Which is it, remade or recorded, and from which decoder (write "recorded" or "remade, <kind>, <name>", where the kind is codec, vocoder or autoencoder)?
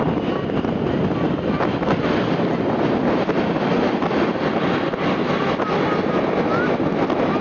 recorded